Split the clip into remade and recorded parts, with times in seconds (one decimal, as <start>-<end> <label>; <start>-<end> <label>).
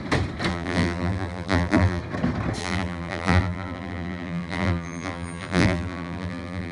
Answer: 0.0-0.5 recorded; 0.5-2.0 remade; 2.0-2.6 recorded; 2.6-6.7 remade